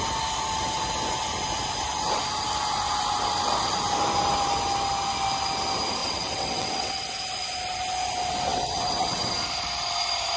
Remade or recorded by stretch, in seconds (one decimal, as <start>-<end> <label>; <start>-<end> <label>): 0.0-6.0 recorded; 6.0-7.2 remade; 7.2-8.5 recorded; 8.5-9.2 remade; 9.2-10.4 recorded